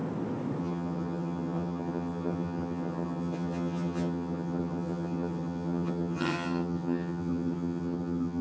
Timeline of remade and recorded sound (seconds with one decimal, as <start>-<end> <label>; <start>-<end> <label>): 0.0-0.6 recorded; 0.6-8.4 remade